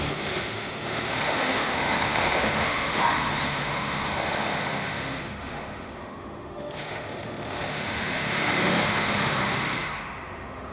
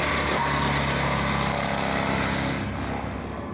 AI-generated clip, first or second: first